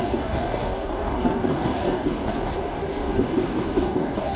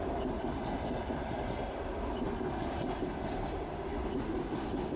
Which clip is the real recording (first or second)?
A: second